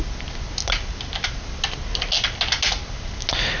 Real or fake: real